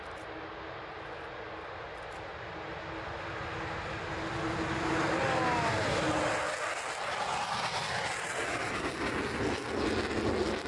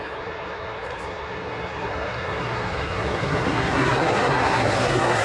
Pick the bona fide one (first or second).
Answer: first